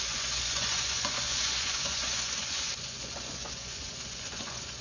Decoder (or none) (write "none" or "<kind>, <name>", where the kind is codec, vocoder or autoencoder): vocoder, Vocos